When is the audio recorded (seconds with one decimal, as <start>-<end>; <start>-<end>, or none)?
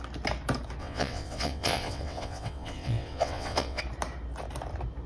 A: 0.0-0.8; 3.8-5.1